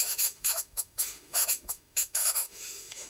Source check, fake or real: fake